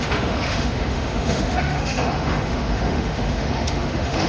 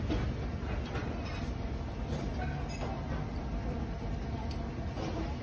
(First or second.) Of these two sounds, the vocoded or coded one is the first